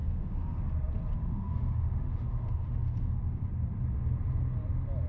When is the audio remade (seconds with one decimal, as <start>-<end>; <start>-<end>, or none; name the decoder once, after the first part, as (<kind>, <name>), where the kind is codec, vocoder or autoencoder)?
0.0-0.6 (autoencoder, DAC-VAE); 1.2-3.4